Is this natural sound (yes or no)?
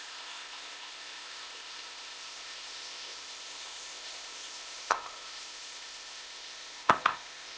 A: no